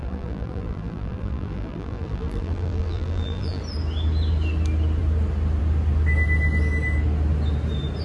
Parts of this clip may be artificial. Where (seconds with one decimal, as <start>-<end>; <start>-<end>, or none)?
0.0-3.6